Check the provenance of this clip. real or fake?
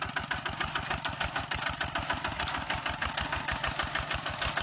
real